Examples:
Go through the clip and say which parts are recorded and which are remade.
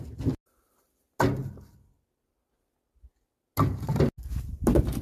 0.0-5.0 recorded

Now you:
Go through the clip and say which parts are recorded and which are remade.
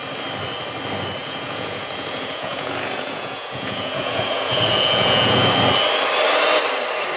0.0-1.2 recorded; 1.2-5.5 remade; 5.5-7.2 recorded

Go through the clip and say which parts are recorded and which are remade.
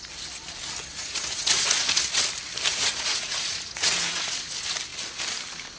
0.0-0.9 recorded; 0.9-2.0 remade; 2.0-2.7 recorded; 2.7-4.3 remade; 4.3-5.8 recorded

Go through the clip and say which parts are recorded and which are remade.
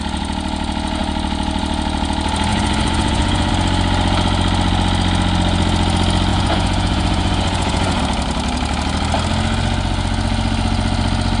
0.0-2.5 recorded; 2.5-3.5 remade; 3.5-6.3 recorded; 6.3-8.0 remade; 8.0-11.4 recorded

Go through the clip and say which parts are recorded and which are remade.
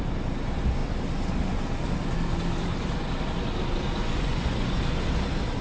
0.0-4.0 recorded; 4.0-4.8 remade; 4.8-5.6 recorded